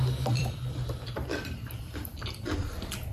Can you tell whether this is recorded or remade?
remade